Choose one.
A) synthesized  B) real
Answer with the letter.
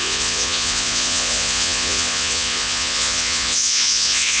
A